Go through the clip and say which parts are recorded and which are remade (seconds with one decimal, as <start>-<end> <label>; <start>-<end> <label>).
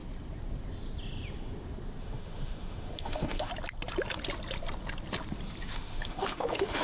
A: 0.0-2.0 recorded; 2.0-3.5 remade; 3.5-5.6 recorded; 5.6-6.8 remade